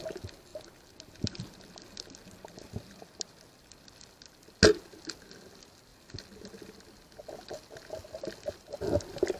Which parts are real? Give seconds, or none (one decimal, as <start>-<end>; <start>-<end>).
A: 0.0-9.4